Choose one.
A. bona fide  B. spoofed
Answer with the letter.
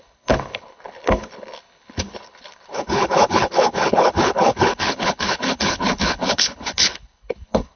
B